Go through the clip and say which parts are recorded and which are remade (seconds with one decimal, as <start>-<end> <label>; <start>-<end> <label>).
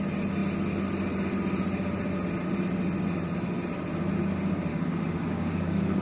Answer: 0.0-4.7 recorded; 4.7-6.0 remade